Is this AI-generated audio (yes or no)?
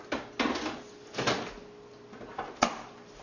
no